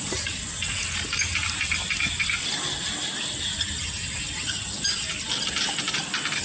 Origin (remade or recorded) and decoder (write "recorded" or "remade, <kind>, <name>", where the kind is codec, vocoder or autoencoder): recorded